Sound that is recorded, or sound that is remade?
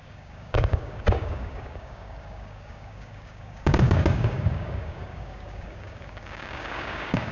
remade